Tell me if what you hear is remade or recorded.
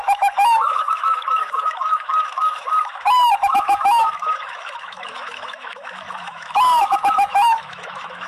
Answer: remade